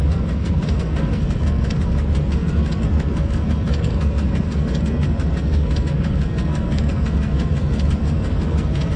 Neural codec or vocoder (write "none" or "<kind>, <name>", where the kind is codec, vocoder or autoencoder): codec, SNAC